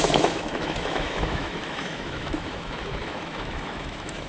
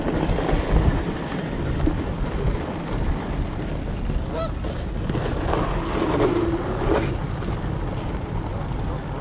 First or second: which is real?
second